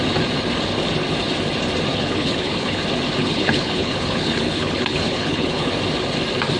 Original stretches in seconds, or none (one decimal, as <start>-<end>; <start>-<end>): 0.0-1.9; 2.8-3.2; 5.7-6.6